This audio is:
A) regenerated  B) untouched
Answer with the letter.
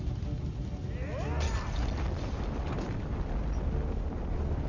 B